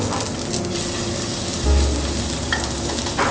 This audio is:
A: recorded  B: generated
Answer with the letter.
A